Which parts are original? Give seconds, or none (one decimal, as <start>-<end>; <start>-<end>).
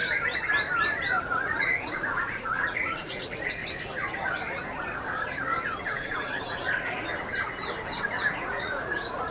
0.0-1.2; 3.6-5.8; 7.1-8.0